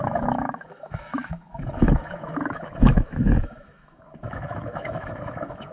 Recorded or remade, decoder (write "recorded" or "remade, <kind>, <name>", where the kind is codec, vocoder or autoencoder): remade, autoencoder, DAC-VAE